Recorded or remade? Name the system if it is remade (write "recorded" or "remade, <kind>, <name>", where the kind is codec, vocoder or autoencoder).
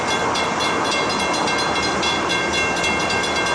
recorded